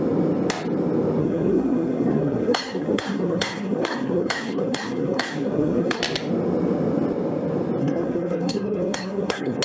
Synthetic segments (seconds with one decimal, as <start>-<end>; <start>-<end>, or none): 1.2-6.0; 7.8-9.6